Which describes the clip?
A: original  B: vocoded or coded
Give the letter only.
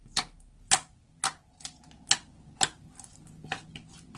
A